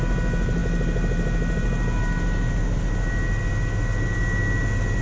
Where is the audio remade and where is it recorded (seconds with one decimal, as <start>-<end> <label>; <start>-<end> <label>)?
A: 0.0-5.0 recorded

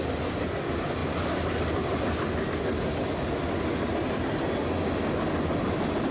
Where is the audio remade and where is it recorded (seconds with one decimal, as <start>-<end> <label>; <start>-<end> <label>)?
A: 0.0-6.1 recorded

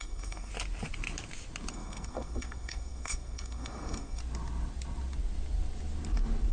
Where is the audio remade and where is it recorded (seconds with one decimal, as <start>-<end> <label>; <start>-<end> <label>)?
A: 0.0-0.5 remade; 0.5-1.7 recorded; 1.7-4.2 remade; 4.2-6.5 recorded

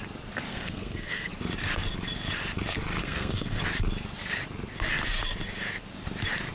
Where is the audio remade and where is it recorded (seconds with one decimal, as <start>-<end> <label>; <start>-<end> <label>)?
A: 0.0-0.5 recorded; 0.5-1.3 remade; 1.3-3.0 recorded; 3.0-3.6 remade; 3.6-6.5 recorded

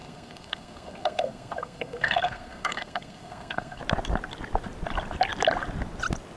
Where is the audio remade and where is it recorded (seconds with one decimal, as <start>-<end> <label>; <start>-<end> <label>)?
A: 0.0-3.8 remade; 3.8-6.4 recorded

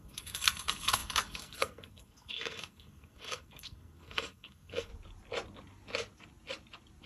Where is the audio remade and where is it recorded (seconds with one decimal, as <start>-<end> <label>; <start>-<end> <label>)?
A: 0.0-4.9 remade; 4.9-7.1 recorded

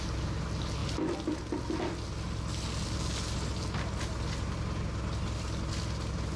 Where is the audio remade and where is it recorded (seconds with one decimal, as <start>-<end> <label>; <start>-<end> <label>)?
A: 0.0-6.4 recorded